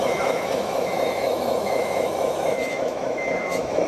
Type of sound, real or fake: fake